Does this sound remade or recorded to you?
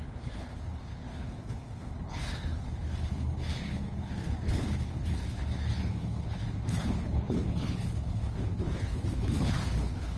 remade